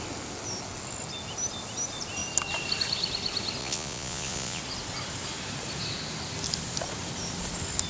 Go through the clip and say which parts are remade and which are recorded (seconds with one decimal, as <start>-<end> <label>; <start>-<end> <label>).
0.0-3.6 recorded; 3.6-4.6 remade; 4.6-7.9 recorded